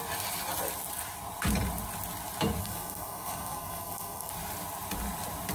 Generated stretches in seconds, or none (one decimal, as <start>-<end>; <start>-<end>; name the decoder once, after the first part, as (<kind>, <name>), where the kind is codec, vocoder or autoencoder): 2.6-4.3 (codec, SNAC)